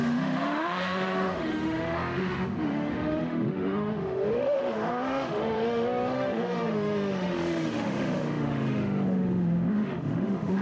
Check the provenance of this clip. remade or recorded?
remade